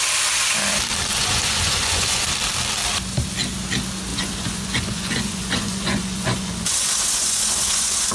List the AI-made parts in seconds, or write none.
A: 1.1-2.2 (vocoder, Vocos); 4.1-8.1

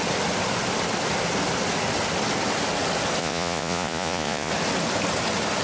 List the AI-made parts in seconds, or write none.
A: 3.2-4.5 (vocoder, Vocos)